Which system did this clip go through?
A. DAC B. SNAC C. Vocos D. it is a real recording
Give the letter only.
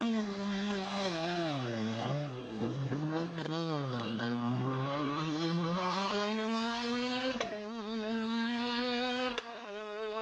B